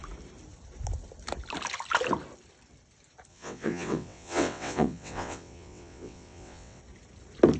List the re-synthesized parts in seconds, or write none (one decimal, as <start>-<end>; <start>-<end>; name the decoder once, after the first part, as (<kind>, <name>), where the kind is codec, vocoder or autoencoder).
3.3-6.8 (vocoder, WaveNeXt)